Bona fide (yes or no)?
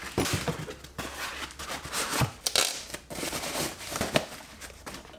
yes